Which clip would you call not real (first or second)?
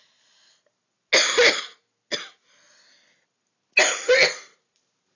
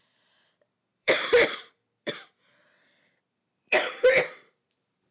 second